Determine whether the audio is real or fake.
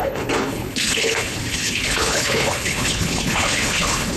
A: fake